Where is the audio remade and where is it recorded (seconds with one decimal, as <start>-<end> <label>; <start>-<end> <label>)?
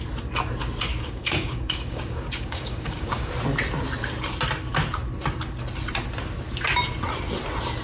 0.0-0.9 recorded; 0.9-3.3 remade; 3.3-7.8 recorded